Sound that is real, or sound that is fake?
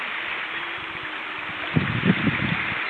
real